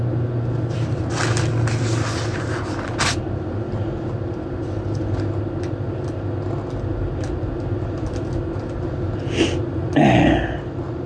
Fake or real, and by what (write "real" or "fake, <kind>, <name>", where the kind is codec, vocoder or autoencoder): real